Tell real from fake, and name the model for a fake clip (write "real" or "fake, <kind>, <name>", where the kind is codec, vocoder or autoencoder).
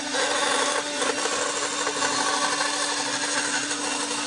real